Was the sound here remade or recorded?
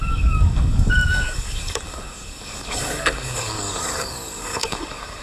remade